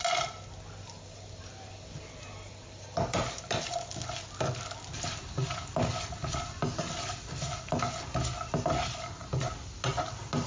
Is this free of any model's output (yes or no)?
yes